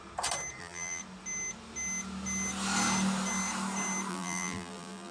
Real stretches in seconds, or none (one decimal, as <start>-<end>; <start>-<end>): 0.0-0.6; 1.0-4.1